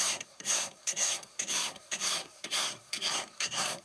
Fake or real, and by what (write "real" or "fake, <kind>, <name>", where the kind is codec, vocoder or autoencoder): fake, codec, SNAC